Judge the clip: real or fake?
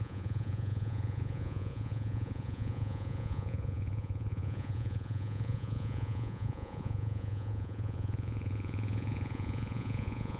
fake